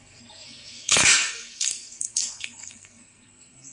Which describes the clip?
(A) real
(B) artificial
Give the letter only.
B